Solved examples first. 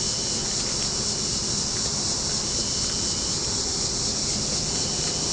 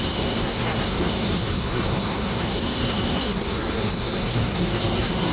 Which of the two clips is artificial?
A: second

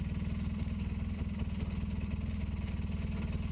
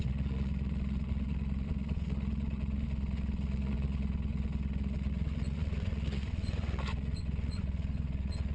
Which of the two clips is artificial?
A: second